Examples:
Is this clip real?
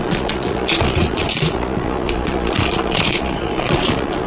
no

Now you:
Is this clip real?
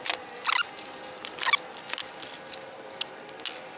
yes